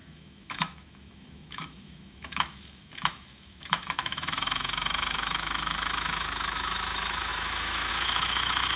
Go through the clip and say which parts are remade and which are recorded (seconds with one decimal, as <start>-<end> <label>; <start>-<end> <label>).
0.0-8.8 remade